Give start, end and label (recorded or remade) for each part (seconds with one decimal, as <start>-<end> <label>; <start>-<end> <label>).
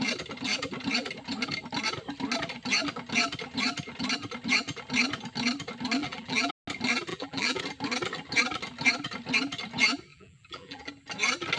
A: 0.0-6.0 recorded; 6.0-6.5 remade; 6.5-7.1 recorded; 7.1-7.6 remade; 7.6-10.1 recorded; 10.1-10.9 remade; 10.9-11.6 recorded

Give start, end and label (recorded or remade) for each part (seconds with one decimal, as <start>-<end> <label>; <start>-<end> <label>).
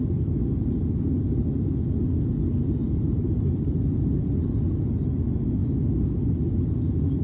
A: 0.0-2.8 recorded; 2.8-4.7 remade; 4.7-7.2 recorded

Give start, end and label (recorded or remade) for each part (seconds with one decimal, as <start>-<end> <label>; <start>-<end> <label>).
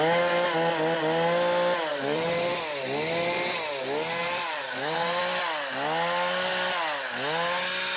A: 0.0-1.9 recorded; 1.9-2.5 remade; 2.5-4.2 recorded; 4.2-5.2 remade; 5.2-8.0 recorded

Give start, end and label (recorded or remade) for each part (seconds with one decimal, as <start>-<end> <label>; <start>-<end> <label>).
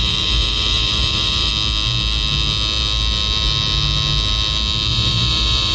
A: 0.0-1.5 remade; 1.5-4.9 recorded; 4.9-5.7 remade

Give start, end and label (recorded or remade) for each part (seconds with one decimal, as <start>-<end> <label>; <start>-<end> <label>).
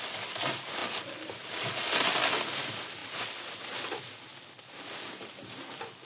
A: 0.0-6.0 recorded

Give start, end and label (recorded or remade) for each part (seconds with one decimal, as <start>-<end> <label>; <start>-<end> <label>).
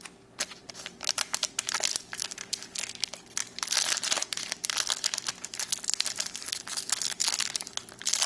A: 0.0-8.3 recorded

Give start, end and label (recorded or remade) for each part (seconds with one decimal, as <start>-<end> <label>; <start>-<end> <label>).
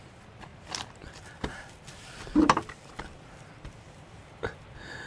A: 0.0-4.2 remade; 4.2-5.1 recorded